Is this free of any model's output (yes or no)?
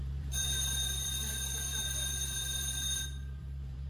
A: no